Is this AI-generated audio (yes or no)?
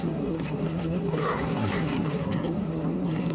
yes